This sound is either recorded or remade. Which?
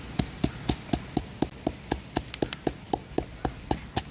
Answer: recorded